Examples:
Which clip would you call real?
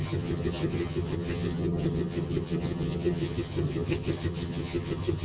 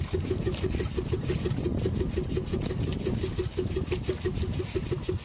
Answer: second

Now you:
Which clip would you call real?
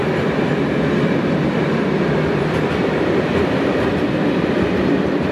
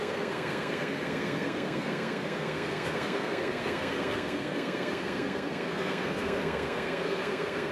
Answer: first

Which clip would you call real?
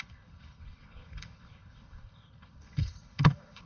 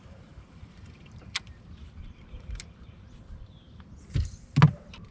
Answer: second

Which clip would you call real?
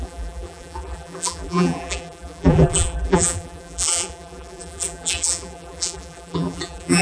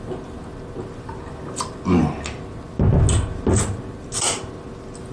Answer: second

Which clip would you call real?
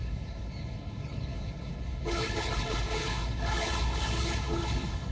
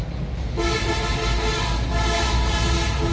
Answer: second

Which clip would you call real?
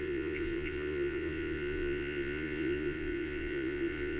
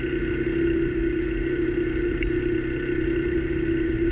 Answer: second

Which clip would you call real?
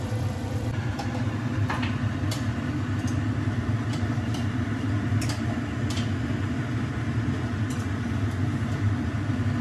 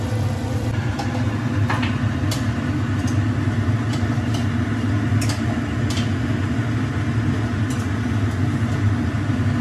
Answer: second